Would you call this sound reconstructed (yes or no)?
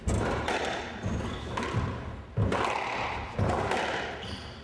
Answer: no